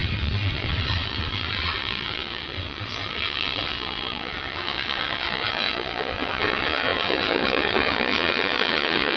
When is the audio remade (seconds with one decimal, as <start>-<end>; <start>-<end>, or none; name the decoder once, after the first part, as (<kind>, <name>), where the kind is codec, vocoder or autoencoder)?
0.0-9.2 (vocoder, WaveNeXt)